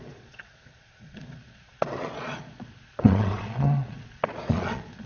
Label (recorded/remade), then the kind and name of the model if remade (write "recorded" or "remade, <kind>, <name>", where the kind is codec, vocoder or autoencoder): remade, vocoder, Vocos